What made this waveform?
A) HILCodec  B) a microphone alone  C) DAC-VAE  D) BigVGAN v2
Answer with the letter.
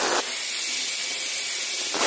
B